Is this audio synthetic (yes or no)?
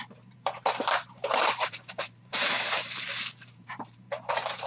yes